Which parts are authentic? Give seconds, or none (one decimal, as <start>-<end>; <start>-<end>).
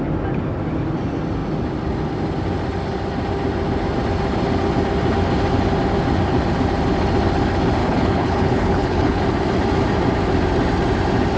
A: 0.0-7.8; 9.2-11.4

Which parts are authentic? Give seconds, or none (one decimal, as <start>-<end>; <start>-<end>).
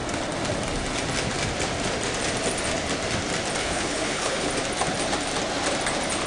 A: 0.0-3.6; 4.5-6.3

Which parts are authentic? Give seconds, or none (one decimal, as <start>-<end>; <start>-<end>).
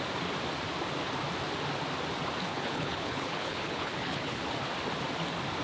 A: 0.0-2.5; 4.4-5.6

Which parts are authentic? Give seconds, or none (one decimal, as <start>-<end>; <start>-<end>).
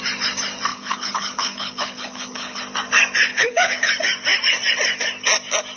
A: 0.0-0.7; 2.6-3.3; 3.9-5.8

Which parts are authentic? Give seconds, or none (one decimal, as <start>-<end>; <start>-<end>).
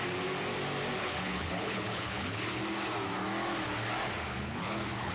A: 0.0-1.0; 2.6-4.3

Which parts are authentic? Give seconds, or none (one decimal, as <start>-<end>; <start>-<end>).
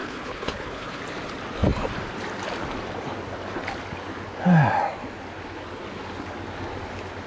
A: 1.0-7.3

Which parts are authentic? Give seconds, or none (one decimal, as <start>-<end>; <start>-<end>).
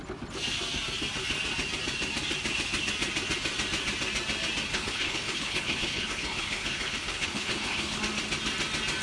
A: 0.0-4.7; 8.0-9.0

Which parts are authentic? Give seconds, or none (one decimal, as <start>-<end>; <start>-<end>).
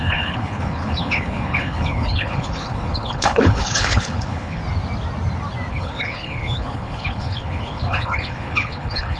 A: 4.6-5.7